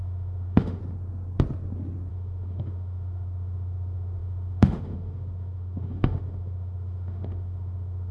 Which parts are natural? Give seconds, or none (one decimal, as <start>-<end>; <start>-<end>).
0.8-2.1